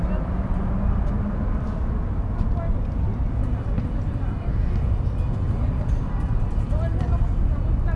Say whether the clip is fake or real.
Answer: real